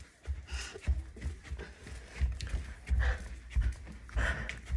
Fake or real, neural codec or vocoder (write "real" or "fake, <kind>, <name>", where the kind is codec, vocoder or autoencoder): real